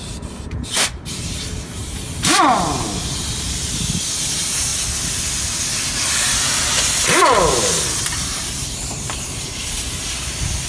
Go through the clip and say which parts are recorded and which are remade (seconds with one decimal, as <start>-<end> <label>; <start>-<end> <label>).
0.0-1.8 remade; 1.8-4.2 recorded; 4.2-4.7 remade; 4.7-8.1 recorded; 8.1-10.7 remade